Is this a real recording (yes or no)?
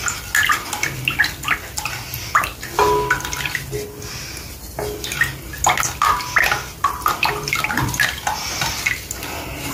yes